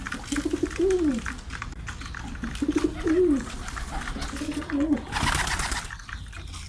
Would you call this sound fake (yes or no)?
no